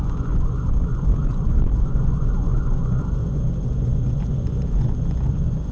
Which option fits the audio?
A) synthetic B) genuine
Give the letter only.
A